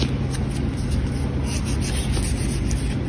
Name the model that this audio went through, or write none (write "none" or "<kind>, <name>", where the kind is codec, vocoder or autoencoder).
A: none